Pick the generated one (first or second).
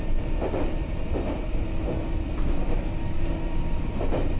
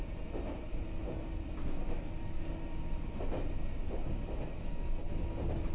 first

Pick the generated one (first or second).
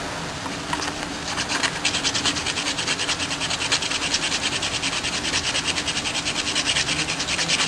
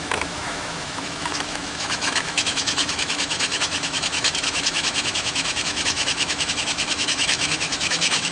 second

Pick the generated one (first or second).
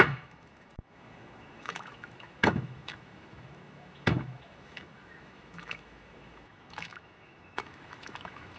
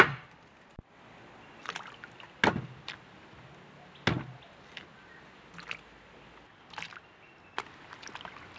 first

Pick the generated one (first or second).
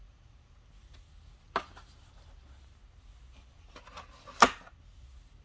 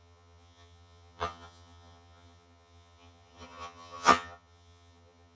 second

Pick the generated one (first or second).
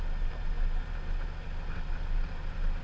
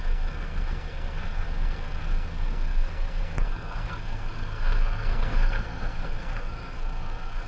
second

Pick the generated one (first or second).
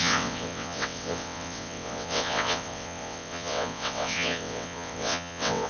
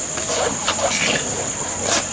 first